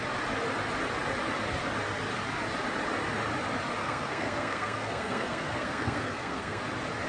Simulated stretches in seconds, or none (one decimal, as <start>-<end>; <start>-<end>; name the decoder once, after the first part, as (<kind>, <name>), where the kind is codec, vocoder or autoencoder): 3.8-6.6 (codec, SNAC)

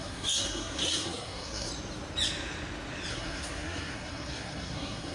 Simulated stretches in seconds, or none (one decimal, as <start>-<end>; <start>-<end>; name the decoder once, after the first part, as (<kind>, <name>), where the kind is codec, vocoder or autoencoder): 0.0-1.7 (codec, SNAC); 3.1-5.1

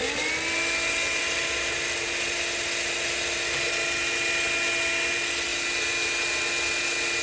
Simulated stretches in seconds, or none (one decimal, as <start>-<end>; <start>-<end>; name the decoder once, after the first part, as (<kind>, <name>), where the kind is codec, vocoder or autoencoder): none